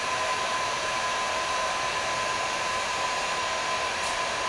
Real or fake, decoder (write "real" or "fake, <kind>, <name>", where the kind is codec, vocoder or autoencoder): fake, vocoder, BigVGAN v2